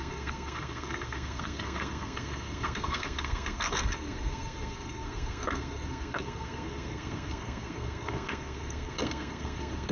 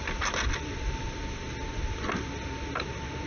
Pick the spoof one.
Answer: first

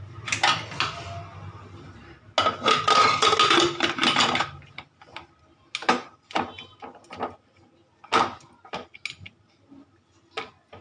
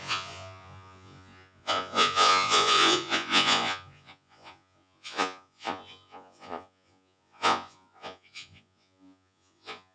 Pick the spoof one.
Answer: second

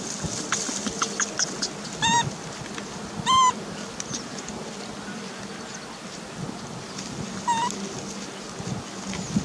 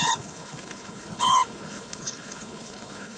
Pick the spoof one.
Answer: second